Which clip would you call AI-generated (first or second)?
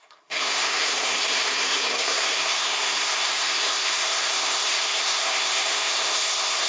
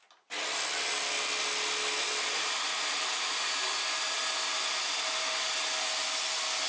first